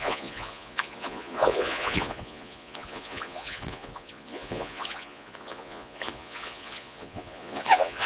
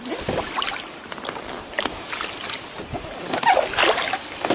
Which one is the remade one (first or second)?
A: first